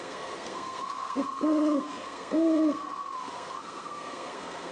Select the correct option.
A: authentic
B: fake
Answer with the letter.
B